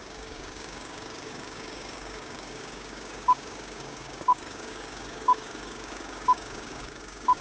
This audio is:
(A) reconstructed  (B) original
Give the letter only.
A